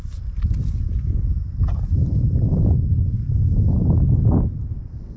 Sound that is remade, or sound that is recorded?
recorded